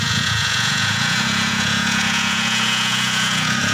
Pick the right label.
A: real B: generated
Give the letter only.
B